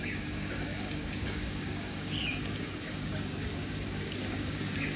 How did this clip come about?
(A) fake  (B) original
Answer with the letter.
A